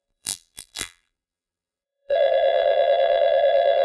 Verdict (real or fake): fake